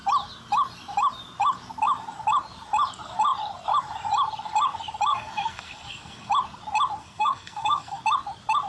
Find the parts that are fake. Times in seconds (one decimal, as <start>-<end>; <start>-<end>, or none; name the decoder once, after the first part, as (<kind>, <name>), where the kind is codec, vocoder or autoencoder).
5.1-6.3 (codec, SNAC); 7.0-8.0